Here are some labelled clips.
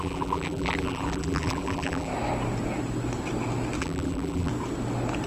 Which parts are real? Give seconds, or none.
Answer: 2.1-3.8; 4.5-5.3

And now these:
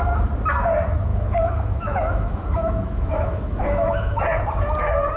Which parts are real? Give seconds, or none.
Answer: 0.0-1.1; 4.2-5.2

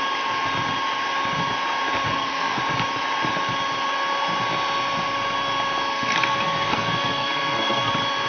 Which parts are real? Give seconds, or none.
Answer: 0.0-2.1; 2.6-5.9; 7.9-8.3

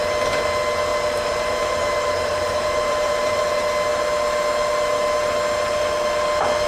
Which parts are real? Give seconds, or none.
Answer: 0.0-0.9; 3.4-6.7

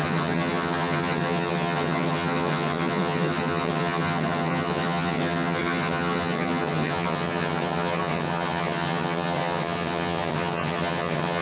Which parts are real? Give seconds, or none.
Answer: none

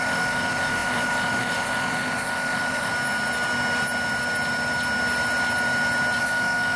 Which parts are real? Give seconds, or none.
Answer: 2.9-6.2